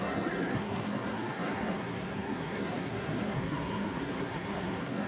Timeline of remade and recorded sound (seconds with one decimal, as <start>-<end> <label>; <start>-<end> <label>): 0.0-5.1 remade